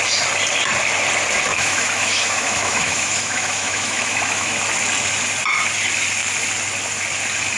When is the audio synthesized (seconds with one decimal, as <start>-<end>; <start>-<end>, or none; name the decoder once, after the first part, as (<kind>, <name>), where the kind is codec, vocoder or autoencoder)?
1.5-4.6 (autoencoder, DAC-VAE)